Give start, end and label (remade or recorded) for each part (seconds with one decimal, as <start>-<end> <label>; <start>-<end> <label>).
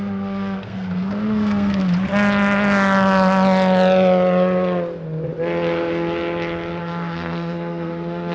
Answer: 0.0-1.8 remade; 1.8-6.8 recorded; 6.8-8.3 remade